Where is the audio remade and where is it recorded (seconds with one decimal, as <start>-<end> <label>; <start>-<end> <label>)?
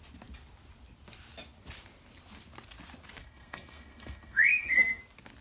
0.0-3.2 recorded; 3.2-5.0 remade; 5.0-5.4 recorded